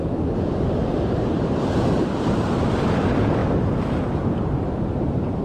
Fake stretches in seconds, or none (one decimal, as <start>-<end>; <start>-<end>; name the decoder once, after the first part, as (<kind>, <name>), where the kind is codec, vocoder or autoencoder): 0.9-2.9 (vocoder, BigVGAN v2); 3.4-5.4